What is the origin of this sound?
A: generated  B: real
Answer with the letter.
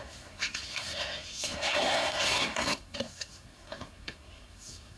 A